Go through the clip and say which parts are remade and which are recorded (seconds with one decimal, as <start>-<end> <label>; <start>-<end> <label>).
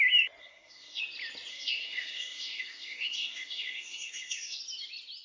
0.0-0.4 recorded; 0.4-1.0 remade; 1.0-1.5 recorded; 1.5-4.6 remade; 4.6-5.2 recorded